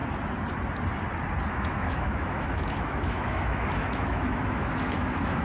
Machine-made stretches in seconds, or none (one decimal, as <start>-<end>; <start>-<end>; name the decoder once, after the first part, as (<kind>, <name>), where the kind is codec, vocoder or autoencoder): 1.5-5.4 (autoencoder, DAC-VAE)